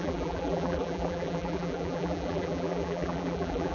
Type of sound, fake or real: fake